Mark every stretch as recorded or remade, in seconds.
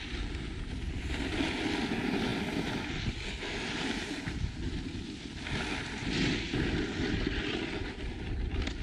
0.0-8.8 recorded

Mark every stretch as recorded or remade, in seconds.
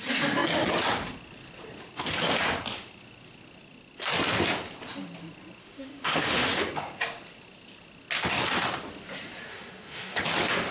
0.0-5.6 recorded; 5.6-6.6 remade; 6.6-9.5 recorded; 9.5-10.2 remade; 10.2-10.7 recorded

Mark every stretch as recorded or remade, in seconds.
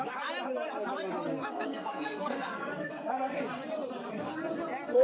0.0-1.4 recorded; 1.4-3.4 remade; 3.4-5.0 recorded